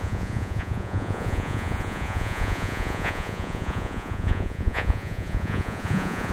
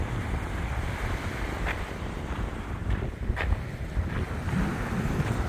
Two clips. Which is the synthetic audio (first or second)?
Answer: first